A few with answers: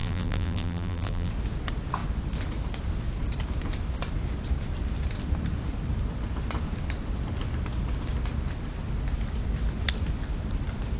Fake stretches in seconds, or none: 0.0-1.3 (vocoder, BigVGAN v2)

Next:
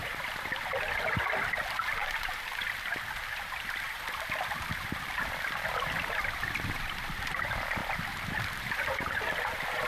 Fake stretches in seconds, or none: 2.0-7.2 (vocoder, BigVGAN v2); 7.8-8.7

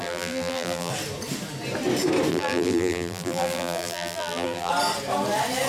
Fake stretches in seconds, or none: 0.0-0.9 (vocoder, BigVGAN v2); 2.3-4.7

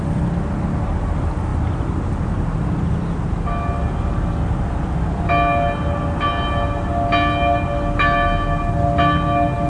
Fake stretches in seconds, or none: none

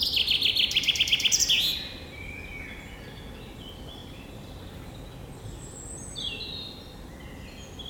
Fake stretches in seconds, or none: none

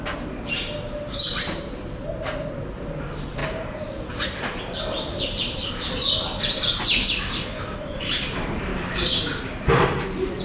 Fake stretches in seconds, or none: 0.0-8.7 (vocoder, BigVGAN v2); 9.4-10.4